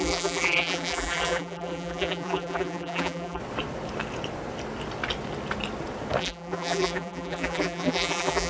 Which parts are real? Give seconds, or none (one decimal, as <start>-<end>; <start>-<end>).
3.4-6.2